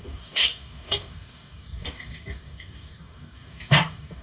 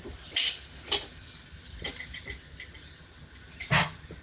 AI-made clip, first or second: first